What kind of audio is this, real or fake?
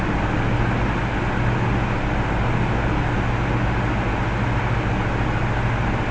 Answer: real